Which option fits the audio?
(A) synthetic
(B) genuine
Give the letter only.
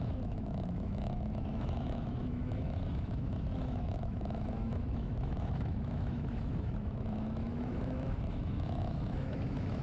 A